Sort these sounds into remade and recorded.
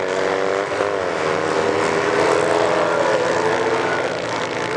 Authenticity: recorded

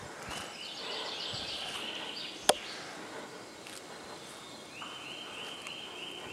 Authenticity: recorded